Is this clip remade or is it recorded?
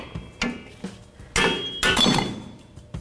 recorded